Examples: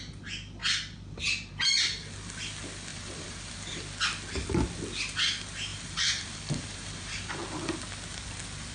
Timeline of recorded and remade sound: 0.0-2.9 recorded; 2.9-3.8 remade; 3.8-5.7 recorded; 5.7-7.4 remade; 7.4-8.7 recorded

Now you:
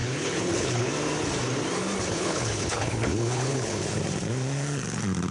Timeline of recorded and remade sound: 0.0-0.9 remade; 0.9-2.1 recorded; 2.1-4.0 remade; 4.0-5.3 recorded